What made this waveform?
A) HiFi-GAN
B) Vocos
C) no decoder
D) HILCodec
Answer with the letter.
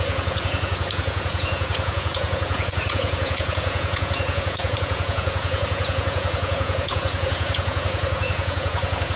B